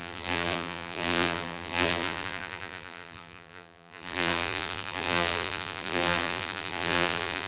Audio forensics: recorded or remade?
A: remade